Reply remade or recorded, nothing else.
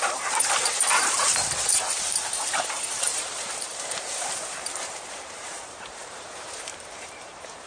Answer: remade